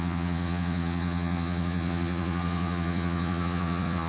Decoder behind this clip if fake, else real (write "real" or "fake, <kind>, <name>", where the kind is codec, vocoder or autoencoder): fake, vocoder, Vocos